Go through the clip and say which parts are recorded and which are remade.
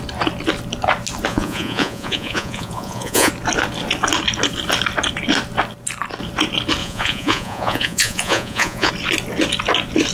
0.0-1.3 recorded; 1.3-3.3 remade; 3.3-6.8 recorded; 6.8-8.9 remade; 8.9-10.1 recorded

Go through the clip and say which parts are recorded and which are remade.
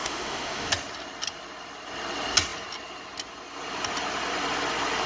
0.0-0.7 remade; 0.7-5.1 recorded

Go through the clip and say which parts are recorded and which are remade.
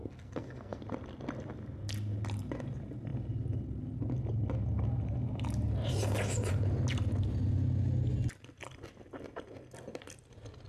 0.0-0.8 remade; 0.8-10.7 recorded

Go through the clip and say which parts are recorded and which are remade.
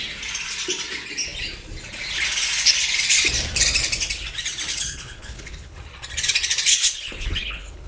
0.0-4.7 recorded; 4.7-5.8 remade; 5.8-6.7 recorded; 6.7-7.9 remade